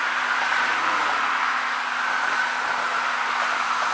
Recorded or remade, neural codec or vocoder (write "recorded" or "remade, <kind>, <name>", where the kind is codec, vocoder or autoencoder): recorded